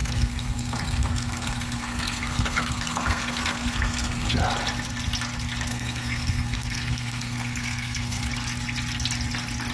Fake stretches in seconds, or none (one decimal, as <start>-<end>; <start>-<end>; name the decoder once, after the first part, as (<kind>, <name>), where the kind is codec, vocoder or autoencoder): 0.0-4.3 (codec, SNAC); 5.7-8.3